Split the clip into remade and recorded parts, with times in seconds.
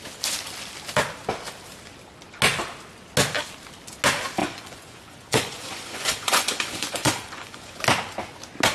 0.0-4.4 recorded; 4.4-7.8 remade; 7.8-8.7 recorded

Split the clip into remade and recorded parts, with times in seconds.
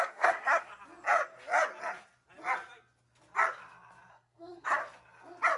0.0-0.7 remade; 0.7-4.1 recorded; 4.1-4.8 remade; 4.8-5.6 recorded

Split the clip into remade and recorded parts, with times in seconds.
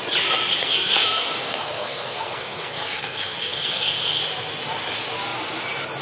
0.0-0.6 recorded; 0.6-4.2 remade; 4.2-6.0 recorded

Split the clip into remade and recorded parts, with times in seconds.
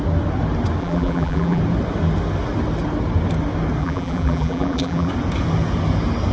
0.0-0.8 recorded; 0.8-1.6 remade; 1.6-3.8 recorded; 3.8-5.1 remade; 5.1-6.3 recorded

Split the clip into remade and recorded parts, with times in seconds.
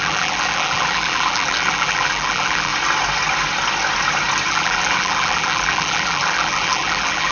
0.0-2.7 remade; 2.7-4.5 recorded; 4.5-7.3 remade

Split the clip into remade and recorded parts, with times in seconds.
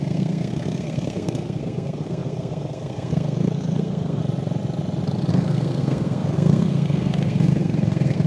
0.0-4.2 remade; 4.2-5.3 recorded; 5.3-8.3 remade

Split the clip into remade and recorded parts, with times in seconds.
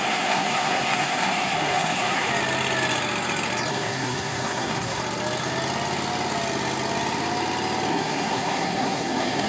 0.0-2.3 remade; 2.3-3.7 recorded; 3.7-5.0 remade; 5.0-7.9 recorded; 7.9-9.5 remade